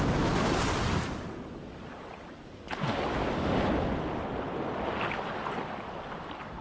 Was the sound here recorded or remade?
recorded